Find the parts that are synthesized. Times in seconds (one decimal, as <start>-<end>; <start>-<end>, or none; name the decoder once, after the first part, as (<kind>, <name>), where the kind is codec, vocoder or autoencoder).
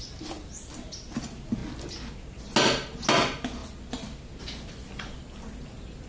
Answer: none